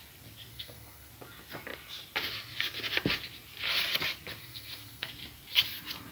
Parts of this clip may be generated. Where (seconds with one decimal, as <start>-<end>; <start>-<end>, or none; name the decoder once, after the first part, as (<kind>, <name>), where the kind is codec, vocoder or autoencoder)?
0.5-1.1 (codec, SNAC); 4.4-5.1